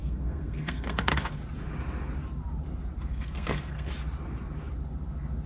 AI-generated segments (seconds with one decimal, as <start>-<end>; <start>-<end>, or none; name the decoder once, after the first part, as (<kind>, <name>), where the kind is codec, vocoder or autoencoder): 0.0-1.4 (codec, SNAC); 3.1-3.9